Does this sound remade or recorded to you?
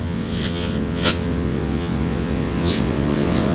remade